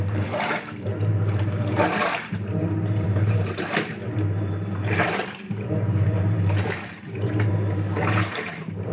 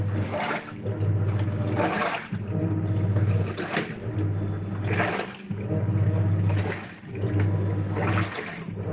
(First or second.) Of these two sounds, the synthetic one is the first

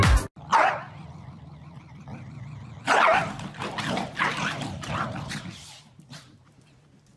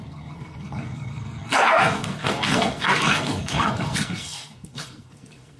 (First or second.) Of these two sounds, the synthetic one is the second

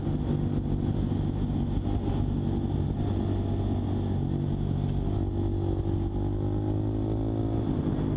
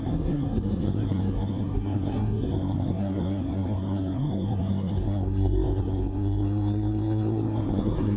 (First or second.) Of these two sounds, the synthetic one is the second